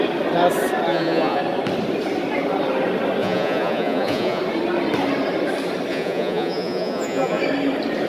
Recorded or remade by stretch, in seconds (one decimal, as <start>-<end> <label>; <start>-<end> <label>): 0.0-0.9 recorded; 0.9-1.4 remade; 1.4-3.2 recorded; 3.2-4.4 remade; 4.4-5.9 recorded; 5.9-7.4 remade; 7.4-8.1 recorded